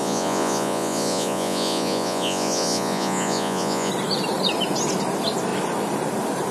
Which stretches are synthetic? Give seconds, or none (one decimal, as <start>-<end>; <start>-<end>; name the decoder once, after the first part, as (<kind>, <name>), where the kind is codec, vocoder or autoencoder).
0.0-3.9 (vocoder, Vocos)